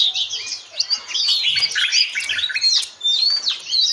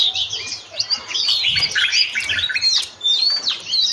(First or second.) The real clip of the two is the first